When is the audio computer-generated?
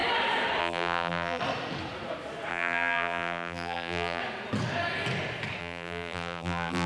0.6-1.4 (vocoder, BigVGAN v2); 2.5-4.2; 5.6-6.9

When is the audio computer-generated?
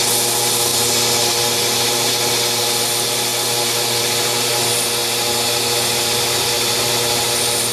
none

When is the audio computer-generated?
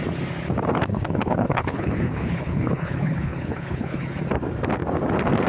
0.9-4.2 (codec, HILCodec)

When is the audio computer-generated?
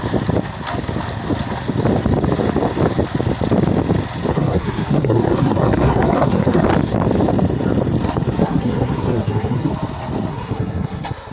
4.3-6.6 (codec, SNAC); 8.4-9.7; 10.3-11.3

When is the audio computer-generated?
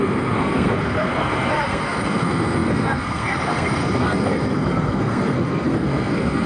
0.0-6.5 (codec, SNAC)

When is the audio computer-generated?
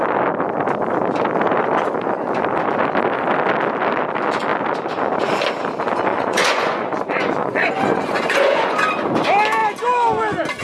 6.1-8.9 (vocoder, Vocos)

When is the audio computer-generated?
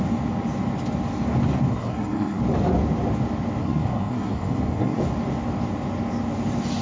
1.7-2.4 (codec, SNAC); 3.6-5.0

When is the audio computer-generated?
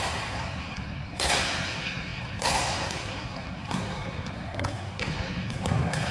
0.0-6.1 (codec, SNAC)